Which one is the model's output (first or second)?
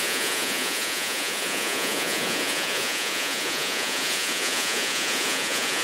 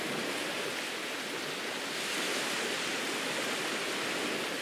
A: first